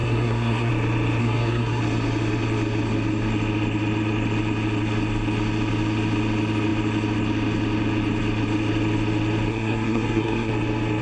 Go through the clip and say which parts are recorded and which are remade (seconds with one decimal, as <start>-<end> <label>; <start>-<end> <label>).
0.0-0.7 remade; 0.7-1.2 recorded; 1.2-1.8 remade; 1.8-9.5 recorded; 9.5-10.5 remade; 10.5-11.0 recorded